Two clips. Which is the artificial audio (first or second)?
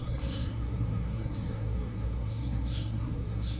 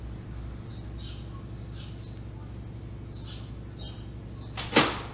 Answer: first